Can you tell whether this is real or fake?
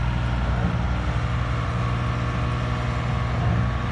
real